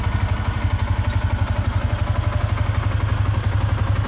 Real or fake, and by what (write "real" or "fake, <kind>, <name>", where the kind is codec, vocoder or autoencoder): real